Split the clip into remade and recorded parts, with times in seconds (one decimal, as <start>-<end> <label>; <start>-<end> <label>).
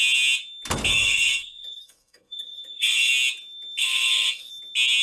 0.0-0.9 recorded; 0.9-3.1 remade; 3.1-3.8 recorded; 3.8-4.5 remade; 4.5-5.0 recorded